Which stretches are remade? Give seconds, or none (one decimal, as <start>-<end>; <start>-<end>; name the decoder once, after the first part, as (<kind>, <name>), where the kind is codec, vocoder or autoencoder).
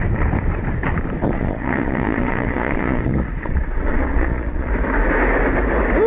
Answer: 1.2-4.7 (vocoder, Vocos)